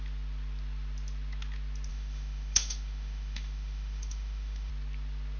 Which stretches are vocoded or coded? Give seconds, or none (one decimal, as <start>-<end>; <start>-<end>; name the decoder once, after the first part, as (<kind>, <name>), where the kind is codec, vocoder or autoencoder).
1.9-4.7 (autoencoder, DAC-VAE)